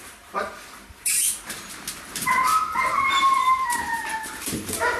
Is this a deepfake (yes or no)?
yes